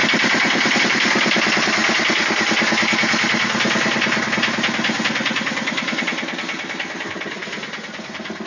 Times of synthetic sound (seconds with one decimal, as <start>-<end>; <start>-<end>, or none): none

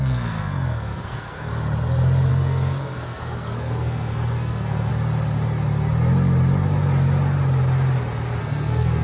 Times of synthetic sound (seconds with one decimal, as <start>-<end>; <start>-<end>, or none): 0.0-1.5; 2.3-4.9; 8.4-9.0

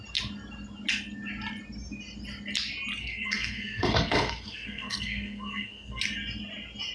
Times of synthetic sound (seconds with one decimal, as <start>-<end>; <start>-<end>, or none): 3.0-6.0

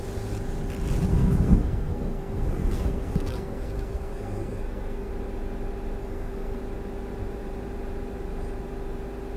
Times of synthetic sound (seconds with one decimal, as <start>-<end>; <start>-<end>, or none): 1.1-5.1; 6.0-6.6

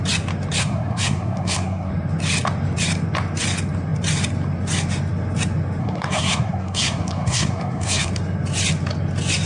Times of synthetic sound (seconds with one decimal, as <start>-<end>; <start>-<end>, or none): 0.6-1.9; 5.8-8.1

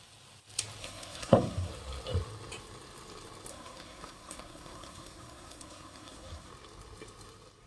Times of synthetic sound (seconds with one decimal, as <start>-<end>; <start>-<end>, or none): 0.8-1.7; 3.5-6.5

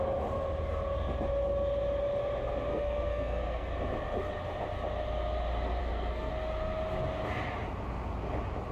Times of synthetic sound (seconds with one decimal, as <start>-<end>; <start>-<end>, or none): 2.7-3.7; 5.8-6.3

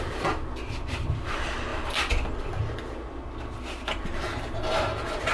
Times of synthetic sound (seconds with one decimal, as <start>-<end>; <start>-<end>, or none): none